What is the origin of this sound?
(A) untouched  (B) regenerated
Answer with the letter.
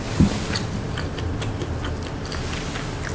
A